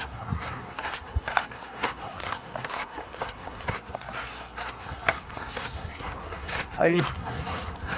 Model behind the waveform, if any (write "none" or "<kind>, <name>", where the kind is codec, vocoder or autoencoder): codec, SNAC